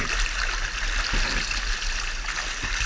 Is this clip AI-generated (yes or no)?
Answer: no